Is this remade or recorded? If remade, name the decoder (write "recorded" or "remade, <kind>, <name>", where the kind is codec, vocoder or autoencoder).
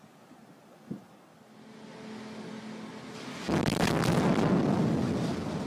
recorded